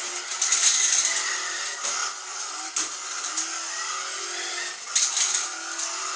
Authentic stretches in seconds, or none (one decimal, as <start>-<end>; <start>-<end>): 0.0-6.2